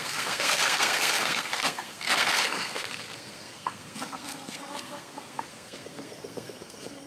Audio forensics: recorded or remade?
remade